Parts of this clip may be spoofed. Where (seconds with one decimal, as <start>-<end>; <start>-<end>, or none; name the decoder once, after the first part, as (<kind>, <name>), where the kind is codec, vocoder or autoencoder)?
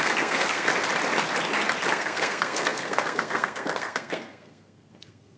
0.0-0.7 (codec, SNAC); 1.9-5.4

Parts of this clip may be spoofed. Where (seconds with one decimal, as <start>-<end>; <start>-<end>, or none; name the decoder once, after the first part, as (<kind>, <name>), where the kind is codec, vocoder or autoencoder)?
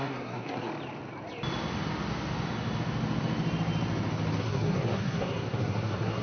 0.0-0.7 (codec, SNAC); 4.4-6.2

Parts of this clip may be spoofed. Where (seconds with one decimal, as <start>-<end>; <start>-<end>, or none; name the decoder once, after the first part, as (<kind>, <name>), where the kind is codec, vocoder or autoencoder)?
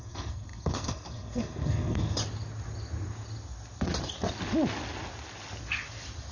0.0-2.2 (codec, SNAC)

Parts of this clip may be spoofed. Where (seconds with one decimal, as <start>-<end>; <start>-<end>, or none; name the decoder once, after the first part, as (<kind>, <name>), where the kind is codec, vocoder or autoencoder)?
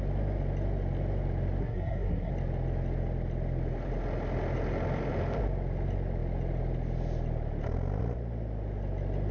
1.6-2.3 (codec, SNAC)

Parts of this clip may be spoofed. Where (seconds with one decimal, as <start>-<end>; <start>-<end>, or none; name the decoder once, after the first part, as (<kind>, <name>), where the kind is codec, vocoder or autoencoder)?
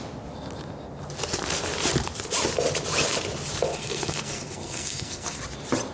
3.7-5.4 (codec, SNAC)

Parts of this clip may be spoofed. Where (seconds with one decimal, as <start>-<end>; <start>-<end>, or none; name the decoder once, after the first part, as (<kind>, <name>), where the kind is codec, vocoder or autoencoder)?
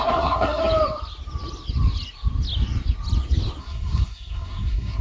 0.0-0.6 (codec, SNAC); 3.6-5.0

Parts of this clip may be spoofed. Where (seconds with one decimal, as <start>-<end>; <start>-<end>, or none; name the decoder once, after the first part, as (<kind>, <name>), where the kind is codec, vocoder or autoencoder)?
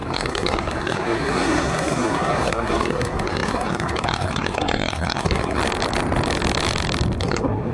0.0-5.6 (codec, SNAC); 7.2-7.7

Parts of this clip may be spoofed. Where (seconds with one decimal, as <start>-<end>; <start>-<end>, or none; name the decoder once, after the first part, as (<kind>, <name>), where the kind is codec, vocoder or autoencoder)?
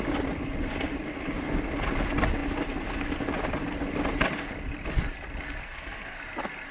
5.6-6.2 (codec, SNAC)